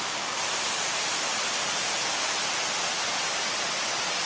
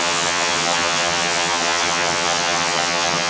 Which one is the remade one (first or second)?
second